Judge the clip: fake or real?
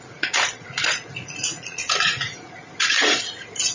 fake